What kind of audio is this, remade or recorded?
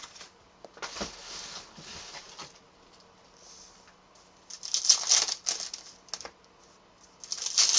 recorded